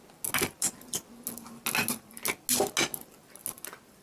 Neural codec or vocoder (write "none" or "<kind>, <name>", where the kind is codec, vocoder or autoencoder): none